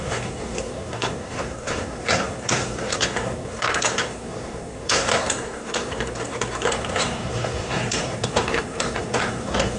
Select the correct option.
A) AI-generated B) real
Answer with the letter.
A